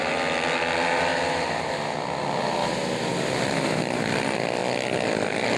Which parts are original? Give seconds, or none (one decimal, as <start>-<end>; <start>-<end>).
1.1-1.6; 4.6-5.6